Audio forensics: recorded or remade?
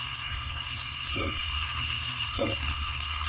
remade